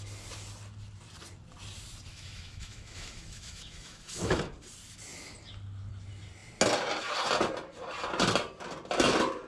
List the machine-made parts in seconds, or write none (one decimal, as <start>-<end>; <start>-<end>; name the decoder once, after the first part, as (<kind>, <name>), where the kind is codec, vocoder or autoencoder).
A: 2.1-4.4 (autoencoder, DAC-VAE)